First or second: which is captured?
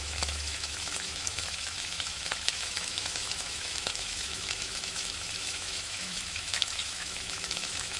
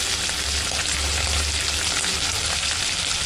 second